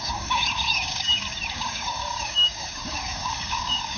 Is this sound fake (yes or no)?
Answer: yes